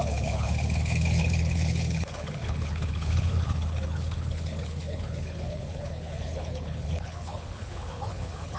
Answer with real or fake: fake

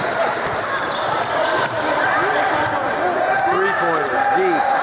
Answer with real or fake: real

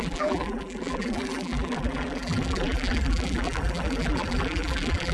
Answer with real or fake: fake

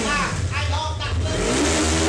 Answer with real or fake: real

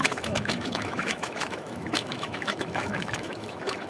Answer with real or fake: fake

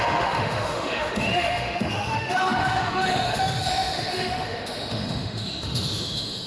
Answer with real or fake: fake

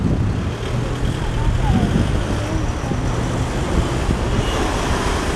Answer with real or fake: real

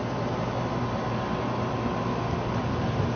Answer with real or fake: real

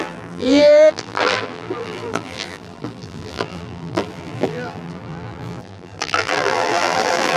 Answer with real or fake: fake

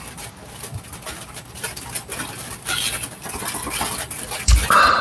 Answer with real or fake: real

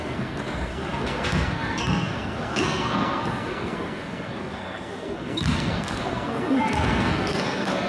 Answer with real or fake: fake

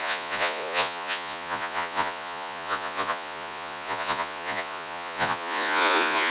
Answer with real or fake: fake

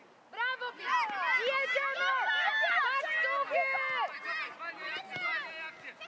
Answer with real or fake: real